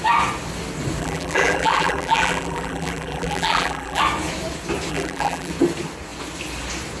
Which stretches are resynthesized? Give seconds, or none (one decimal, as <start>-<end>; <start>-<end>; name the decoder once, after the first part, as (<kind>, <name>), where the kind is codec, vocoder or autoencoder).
1.0-4.0 (vocoder, BigVGAN v2); 4.9-5.5

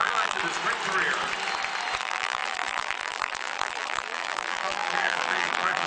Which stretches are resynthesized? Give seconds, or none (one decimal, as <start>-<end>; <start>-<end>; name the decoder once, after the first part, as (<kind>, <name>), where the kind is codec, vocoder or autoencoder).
0.0-0.4 (vocoder, BigVGAN v2); 2.0-5.9

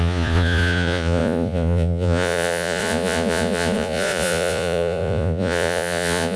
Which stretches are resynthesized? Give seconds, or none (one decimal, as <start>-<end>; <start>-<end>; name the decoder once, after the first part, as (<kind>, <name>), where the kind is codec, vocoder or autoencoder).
0.0-6.4 (vocoder, Vocos)